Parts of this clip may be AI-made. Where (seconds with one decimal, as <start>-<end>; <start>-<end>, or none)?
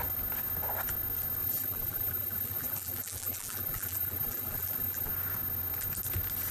1.4-5.1